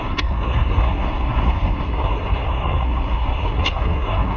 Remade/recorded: remade